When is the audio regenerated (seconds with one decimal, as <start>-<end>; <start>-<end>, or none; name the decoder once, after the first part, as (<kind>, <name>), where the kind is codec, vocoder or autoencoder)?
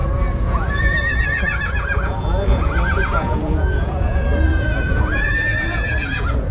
0.0-6.5 (vocoder, Vocos)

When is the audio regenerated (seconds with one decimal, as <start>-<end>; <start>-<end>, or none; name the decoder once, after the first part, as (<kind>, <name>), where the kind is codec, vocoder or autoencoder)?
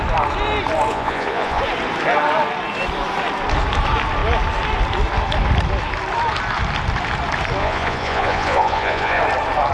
0.9-1.6 (vocoder, Vocos); 7.6-9.2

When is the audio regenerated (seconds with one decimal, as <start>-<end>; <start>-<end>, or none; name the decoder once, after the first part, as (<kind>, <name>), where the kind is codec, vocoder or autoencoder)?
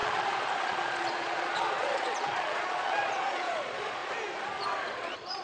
0.0-4.0 (vocoder, Vocos); 4.9-5.4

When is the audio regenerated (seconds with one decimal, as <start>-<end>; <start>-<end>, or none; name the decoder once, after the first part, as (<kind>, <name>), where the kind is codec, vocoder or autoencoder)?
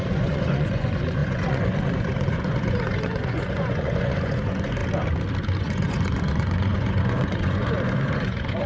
0.0-4.8 (vocoder, Vocos); 5.6-8.7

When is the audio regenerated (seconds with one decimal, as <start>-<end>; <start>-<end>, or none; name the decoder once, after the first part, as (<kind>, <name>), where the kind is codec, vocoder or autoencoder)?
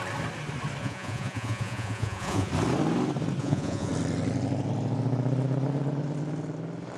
0.8-2.5 (vocoder, Vocos); 3.4-3.9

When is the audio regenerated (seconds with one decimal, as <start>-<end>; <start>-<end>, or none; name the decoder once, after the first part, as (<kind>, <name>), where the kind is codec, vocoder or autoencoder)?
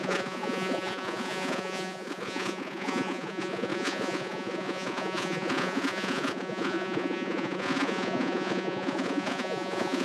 0.0-10.0 (vocoder, Vocos)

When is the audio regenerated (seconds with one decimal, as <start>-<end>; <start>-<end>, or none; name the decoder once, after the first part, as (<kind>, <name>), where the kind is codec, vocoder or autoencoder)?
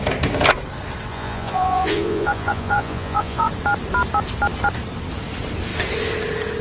1.1-3.5 (vocoder, Vocos)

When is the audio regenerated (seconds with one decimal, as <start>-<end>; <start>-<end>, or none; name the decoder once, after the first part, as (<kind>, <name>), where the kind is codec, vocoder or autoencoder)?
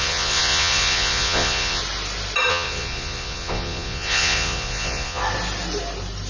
0.0-1.8 (vocoder, Vocos); 2.5-5.2